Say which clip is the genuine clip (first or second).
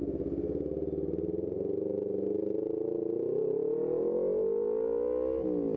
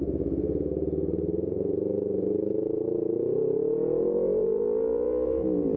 first